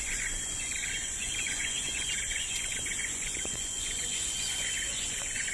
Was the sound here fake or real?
fake